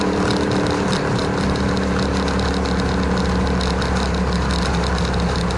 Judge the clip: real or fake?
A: real